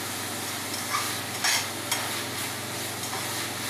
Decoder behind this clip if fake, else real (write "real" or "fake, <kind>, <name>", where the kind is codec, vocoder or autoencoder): real